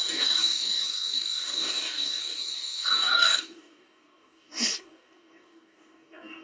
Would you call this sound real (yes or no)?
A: no